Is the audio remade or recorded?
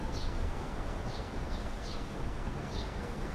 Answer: remade